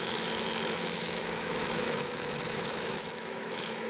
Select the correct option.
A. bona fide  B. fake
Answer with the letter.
B